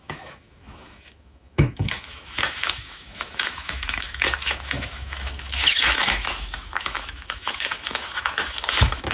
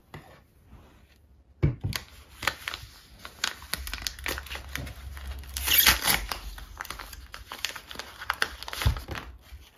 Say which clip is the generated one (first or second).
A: first